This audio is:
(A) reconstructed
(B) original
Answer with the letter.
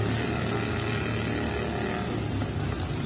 B